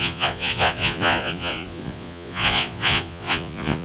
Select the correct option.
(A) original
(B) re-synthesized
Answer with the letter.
B